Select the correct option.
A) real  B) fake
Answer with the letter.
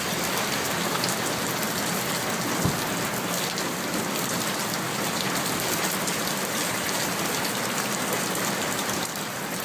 A